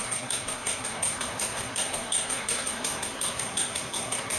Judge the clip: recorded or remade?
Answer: remade